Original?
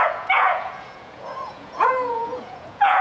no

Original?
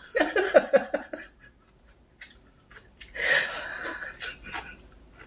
yes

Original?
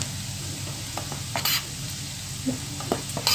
yes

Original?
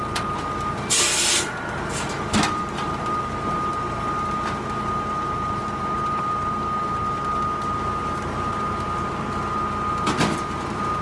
yes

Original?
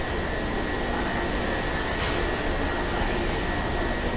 yes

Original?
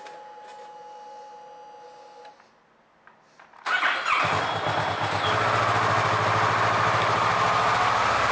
yes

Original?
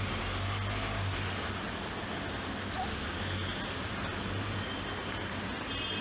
yes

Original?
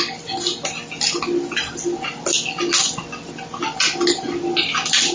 yes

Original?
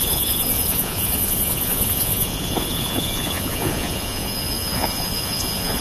no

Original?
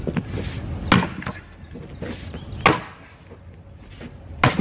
yes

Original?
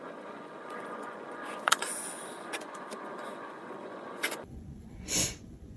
no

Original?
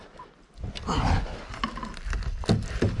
yes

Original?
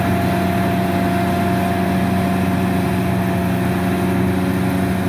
yes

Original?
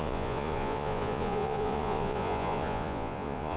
no